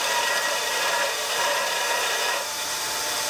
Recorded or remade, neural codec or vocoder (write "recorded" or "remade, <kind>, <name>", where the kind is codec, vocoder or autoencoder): remade, vocoder, BigVGAN v2